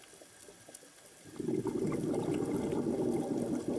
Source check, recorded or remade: recorded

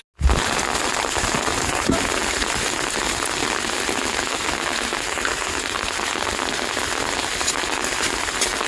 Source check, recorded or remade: recorded